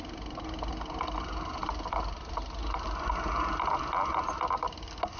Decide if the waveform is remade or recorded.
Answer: recorded